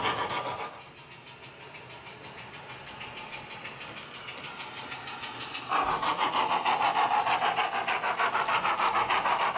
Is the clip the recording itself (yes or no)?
yes